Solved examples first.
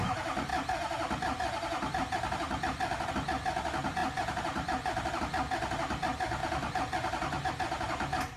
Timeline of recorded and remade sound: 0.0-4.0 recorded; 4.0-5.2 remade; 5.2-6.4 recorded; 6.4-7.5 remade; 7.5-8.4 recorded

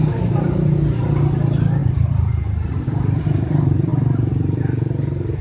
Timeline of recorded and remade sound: 0.0-1.8 recorded; 1.8-3.2 remade; 3.2-3.9 recorded; 3.9-4.6 remade; 4.6-5.4 recorded

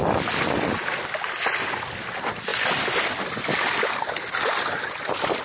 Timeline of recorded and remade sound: 0.0-2.5 recorded; 2.5-5.4 remade

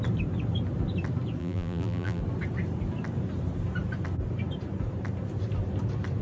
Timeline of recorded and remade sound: 0.0-1.4 recorded; 1.4-2.2 remade; 2.2-6.2 recorded

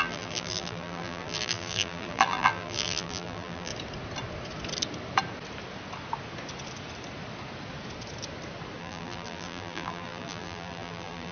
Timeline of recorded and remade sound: 0.0-3.7 remade; 3.7-8.8 recorded; 8.8-11.3 remade

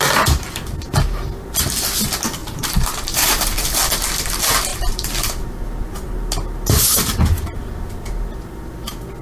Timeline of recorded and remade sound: 0.0-2.4 recorded; 2.4-3.7 remade; 3.7-4.7 recorded; 4.7-5.4 remade; 5.4-9.2 recorded

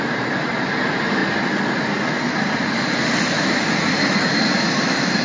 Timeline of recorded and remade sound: 0.0-1.2 remade; 1.2-2.2 recorded; 2.2-5.2 remade

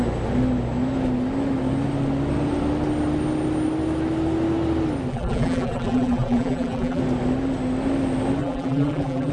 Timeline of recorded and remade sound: 0.0-5.1 recorded; 5.1-7.0 remade; 7.0-8.4 recorded; 8.4-9.3 remade